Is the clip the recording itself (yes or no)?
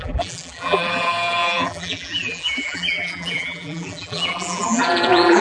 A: no